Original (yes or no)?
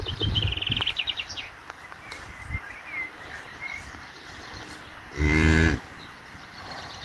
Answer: no